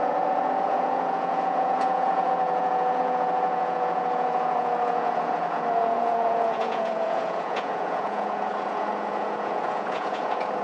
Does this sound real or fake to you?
fake